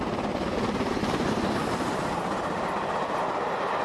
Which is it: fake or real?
real